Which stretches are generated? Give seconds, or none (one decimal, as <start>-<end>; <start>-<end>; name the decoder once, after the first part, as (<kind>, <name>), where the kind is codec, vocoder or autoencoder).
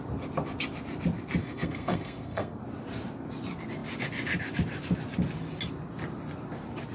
1.4-2.6 (codec, SNAC)